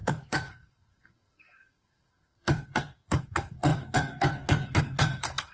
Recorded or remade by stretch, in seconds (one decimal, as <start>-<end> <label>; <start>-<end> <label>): 0.0-5.5 remade